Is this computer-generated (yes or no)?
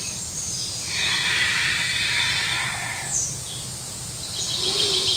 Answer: yes